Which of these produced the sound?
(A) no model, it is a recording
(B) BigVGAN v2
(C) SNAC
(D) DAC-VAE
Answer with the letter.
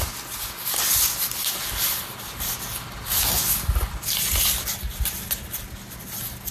A